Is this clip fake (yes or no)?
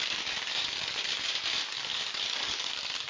yes